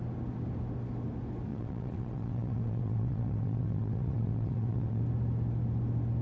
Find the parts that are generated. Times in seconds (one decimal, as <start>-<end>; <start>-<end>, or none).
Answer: 1.5-5.0